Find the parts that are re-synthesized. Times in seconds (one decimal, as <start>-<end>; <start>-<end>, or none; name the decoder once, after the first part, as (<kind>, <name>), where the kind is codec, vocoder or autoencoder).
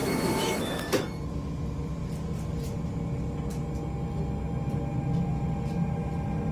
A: 0.0-0.9 (autoencoder, DAC-VAE)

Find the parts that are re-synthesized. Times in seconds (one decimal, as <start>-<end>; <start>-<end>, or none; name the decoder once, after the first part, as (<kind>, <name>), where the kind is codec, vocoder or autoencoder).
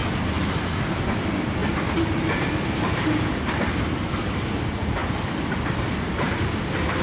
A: 1.0-1.6 (vocoder, BigVGAN v2); 3.3-7.0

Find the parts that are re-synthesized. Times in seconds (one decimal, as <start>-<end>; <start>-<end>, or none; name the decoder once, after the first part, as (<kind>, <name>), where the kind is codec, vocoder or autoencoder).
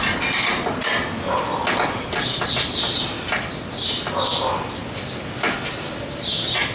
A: none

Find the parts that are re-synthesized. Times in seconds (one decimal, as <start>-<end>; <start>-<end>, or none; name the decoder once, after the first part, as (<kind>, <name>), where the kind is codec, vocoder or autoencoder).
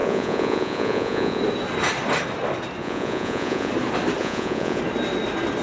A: 0.0-1.4 (vocoder, Vocos); 2.8-3.7; 4.2-4.8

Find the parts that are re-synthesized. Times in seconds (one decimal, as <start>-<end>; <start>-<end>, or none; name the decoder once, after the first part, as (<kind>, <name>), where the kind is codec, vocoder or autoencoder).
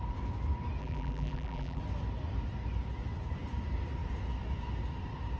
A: 0.8-1.8 (vocoder, BigVGAN v2)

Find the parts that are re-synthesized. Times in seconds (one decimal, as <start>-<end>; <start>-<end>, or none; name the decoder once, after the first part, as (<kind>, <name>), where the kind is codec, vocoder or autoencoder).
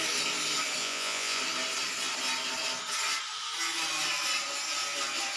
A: 0.8-1.4 (vocoder, Vocos)